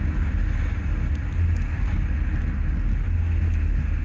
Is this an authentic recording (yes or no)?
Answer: yes